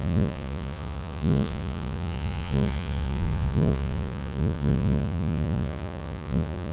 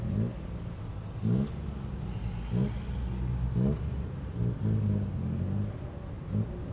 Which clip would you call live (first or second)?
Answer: second